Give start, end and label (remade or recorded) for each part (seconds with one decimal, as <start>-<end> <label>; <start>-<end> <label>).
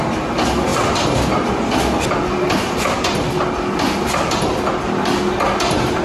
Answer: 0.0-6.0 recorded